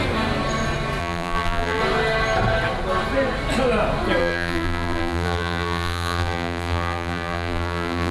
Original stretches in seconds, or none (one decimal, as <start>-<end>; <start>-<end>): 0.0-1.0; 1.8-4.2